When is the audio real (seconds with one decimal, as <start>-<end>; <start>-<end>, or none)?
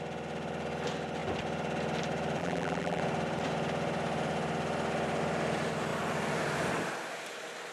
0.0-2.4; 3.0-7.7